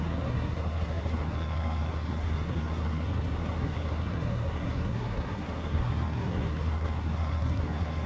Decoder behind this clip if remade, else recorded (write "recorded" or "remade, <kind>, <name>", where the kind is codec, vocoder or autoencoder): remade, codec, SNAC